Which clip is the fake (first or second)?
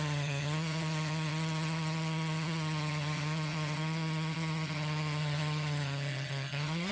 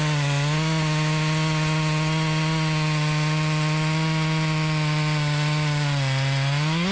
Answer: first